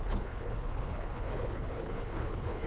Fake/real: fake